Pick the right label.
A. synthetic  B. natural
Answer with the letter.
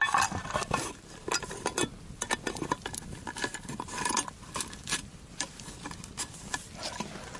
B